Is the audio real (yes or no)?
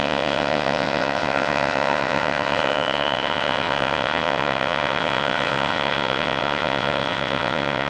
no